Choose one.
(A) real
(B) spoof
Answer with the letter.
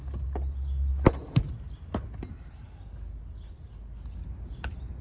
A